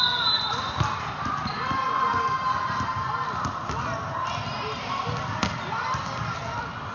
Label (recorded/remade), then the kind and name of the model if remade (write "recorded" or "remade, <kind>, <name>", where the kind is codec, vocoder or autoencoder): recorded